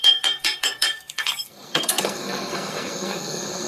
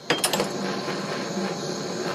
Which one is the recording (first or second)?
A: second